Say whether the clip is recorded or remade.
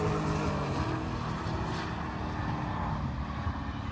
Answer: recorded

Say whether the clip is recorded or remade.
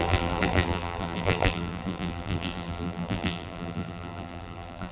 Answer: remade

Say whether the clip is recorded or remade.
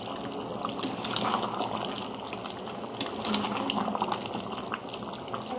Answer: recorded